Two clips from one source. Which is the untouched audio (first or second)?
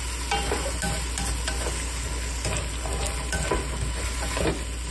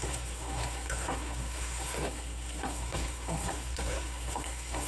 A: first